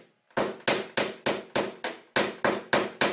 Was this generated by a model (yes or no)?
no